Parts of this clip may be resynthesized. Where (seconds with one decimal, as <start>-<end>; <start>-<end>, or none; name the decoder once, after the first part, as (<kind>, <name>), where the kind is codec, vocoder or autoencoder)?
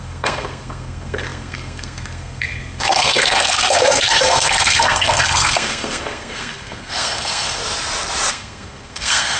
0.0-7.6 (codec, SNAC); 8.3-9.4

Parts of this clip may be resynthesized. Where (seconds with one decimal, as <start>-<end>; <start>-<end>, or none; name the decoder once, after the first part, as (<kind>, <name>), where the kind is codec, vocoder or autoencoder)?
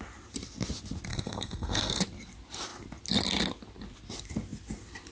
1.1-2.0 (codec, SNAC)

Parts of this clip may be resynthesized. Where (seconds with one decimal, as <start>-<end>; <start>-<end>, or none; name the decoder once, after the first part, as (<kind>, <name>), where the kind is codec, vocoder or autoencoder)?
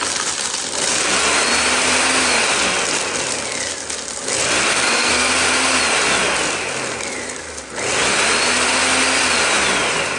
4.7-5.3 (codec, SNAC)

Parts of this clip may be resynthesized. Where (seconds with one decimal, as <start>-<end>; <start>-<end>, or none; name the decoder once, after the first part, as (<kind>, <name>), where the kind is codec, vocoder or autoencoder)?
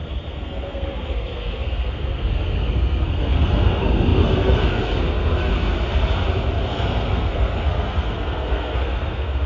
0.0-5.5 (codec, SNAC); 6.7-9.5